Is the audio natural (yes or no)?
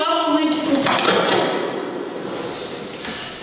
yes